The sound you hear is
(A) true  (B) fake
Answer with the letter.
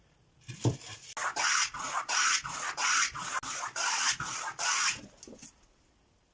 A